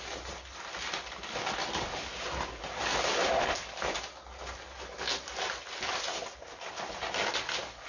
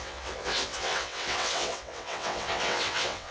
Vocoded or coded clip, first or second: second